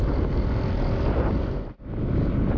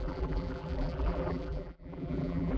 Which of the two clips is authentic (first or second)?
first